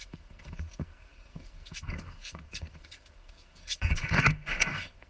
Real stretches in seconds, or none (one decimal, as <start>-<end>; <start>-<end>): none